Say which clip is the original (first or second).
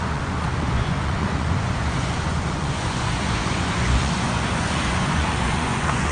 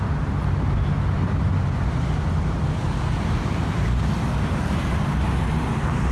second